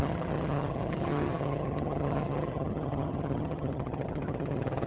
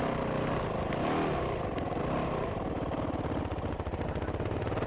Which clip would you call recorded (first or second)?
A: second